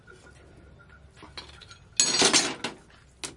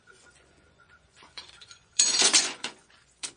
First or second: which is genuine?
first